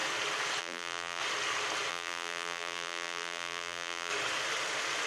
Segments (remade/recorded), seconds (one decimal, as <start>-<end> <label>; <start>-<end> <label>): 0.0-0.6 recorded; 0.6-1.2 remade; 1.2-1.9 recorded; 1.9-4.1 remade; 4.1-5.1 recorded